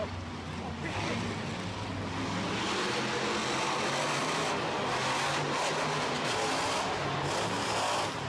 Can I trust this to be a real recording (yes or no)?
yes